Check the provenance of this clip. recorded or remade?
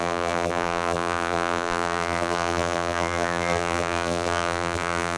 remade